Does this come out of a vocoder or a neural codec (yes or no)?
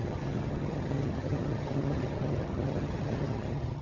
yes